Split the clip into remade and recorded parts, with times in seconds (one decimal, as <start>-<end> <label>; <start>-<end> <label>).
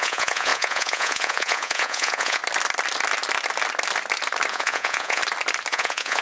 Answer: 0.0-2.4 remade; 2.4-4.5 recorded; 4.5-5.2 remade; 5.2-5.7 recorded; 5.7-6.2 remade